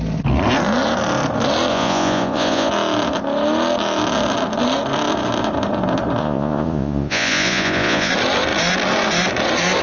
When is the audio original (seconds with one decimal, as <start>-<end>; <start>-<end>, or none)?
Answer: 0.0-1.7; 2.7-6.2; 8.1-9.8